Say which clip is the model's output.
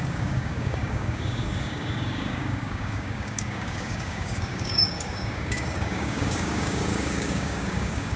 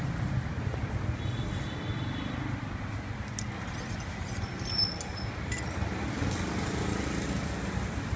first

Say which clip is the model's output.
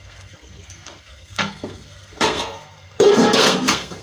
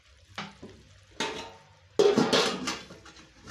first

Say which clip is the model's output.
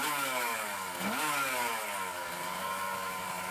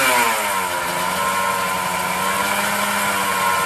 first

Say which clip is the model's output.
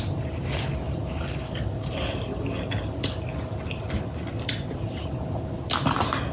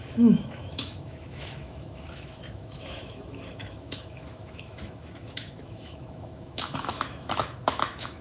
second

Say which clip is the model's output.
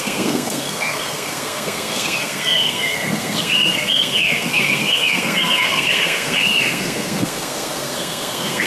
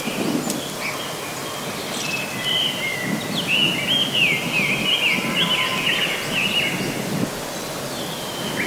first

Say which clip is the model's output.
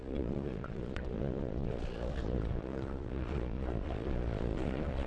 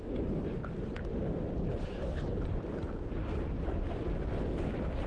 first